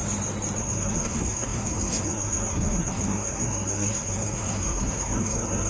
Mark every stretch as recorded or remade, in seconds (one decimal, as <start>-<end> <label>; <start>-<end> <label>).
0.0-0.6 recorded; 0.6-5.7 remade